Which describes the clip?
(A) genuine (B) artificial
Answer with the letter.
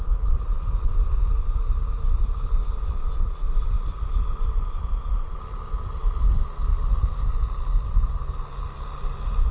A